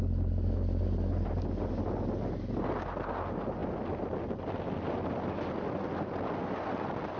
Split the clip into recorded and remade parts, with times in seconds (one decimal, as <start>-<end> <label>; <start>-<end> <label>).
0.0-7.2 recorded